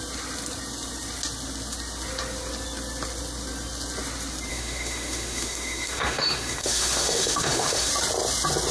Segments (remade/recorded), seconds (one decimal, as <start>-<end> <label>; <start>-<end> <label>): 0.0-4.5 recorded; 4.5-7.9 remade; 7.9-8.7 recorded